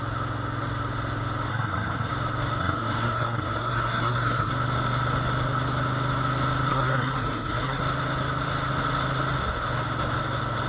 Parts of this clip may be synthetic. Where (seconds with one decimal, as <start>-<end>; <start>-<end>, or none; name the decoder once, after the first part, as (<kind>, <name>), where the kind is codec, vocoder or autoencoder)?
1.5-2.1 (codec, SNAC); 2.6-4.5; 6.7-7.8